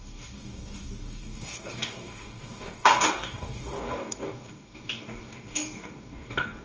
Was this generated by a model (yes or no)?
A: yes